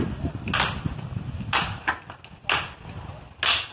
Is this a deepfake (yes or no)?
no